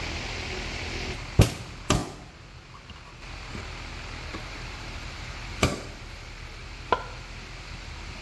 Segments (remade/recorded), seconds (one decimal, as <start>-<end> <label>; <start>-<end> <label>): 0.0-4.3 recorded; 4.3-6.6 remade; 6.6-8.2 recorded